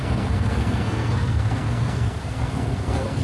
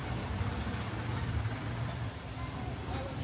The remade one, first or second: first